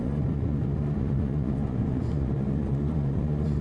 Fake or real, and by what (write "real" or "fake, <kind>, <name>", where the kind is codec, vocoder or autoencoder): fake, vocoder, Vocos